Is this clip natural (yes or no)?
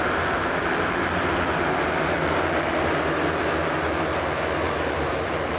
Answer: yes